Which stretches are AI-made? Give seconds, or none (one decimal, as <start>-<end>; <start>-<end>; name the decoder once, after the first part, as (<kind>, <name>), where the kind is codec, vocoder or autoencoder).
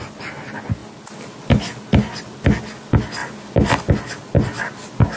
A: none